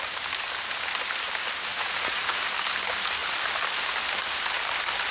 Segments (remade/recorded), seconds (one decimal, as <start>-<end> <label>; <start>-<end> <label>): 0.0-1.7 recorded; 1.7-2.4 remade; 2.4-5.1 recorded